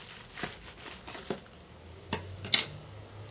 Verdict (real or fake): real